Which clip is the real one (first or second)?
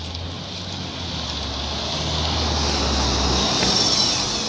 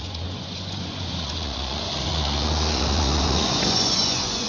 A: first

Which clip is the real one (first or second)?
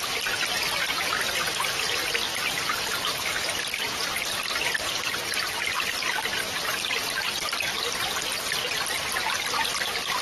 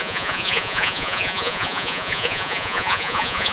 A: first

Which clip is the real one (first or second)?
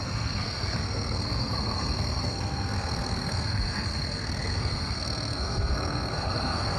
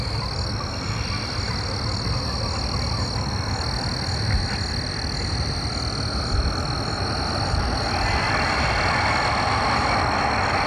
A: second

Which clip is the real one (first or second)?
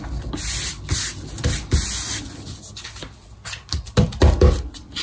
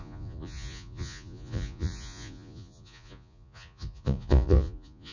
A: first